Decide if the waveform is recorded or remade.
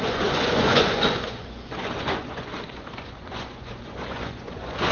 remade